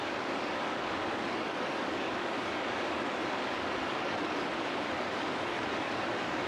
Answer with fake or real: fake